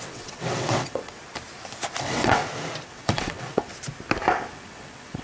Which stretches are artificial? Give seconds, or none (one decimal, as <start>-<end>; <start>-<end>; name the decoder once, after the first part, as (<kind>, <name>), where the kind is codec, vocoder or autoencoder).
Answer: 0.0-1.2 (vocoder, WaveNeXt); 2.0-2.4; 2.9-3.7; 4.5-5.2